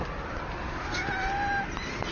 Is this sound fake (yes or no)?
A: no